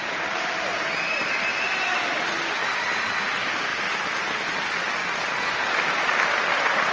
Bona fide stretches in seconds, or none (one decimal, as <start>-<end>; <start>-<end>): 0.0-2.6; 3.2-3.7; 4.3-6.9